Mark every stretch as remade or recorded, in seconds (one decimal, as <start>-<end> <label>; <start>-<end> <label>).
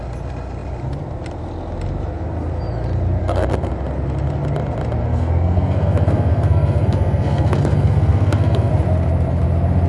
0.0-3.2 recorded; 3.2-3.7 remade; 3.7-5.0 recorded; 5.0-8.7 remade; 8.7-9.9 recorded